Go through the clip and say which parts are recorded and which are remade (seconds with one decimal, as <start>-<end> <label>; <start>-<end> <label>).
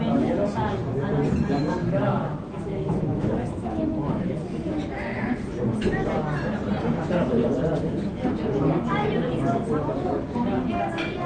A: 0.0-1.6 recorded; 1.6-4.3 remade; 4.3-11.3 recorded